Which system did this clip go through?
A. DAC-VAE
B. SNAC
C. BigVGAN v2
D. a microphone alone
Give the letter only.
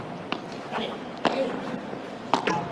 D